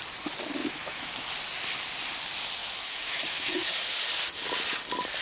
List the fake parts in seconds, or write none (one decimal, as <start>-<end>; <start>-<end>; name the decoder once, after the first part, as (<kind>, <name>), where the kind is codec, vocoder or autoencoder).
0.6-1.3 (autoencoder, DAC-VAE); 2.6-3.7